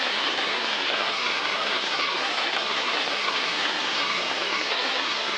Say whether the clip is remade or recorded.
remade